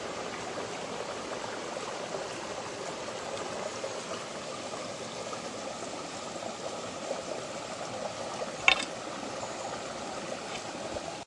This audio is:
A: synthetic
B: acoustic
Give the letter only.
B